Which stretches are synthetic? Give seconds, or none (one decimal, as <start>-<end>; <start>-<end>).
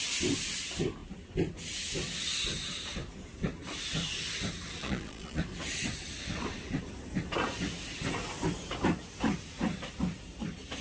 4.8-5.4